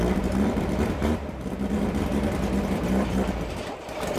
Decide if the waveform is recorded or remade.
remade